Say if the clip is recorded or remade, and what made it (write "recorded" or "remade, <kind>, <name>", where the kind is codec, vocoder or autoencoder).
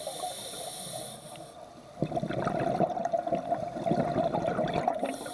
recorded